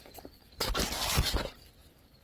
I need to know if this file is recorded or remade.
recorded